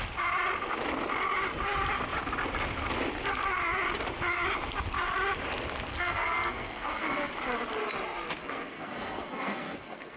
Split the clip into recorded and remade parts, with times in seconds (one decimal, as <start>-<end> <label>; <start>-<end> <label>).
0.0-5.9 recorded; 5.9-7.3 remade; 7.3-8.4 recorded; 8.4-10.2 remade